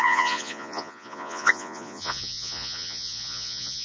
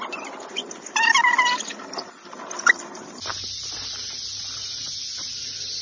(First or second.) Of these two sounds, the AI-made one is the first